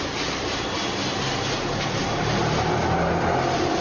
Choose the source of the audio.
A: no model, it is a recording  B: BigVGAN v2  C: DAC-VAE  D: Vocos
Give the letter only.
A